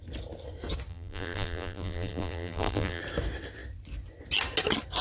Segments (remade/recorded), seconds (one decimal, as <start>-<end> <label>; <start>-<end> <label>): 0.0-0.9 recorded; 0.9-3.0 remade; 3.0-5.0 recorded